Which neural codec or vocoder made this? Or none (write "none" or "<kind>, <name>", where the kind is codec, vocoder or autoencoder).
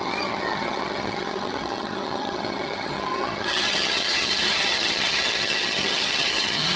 vocoder, HiFi-GAN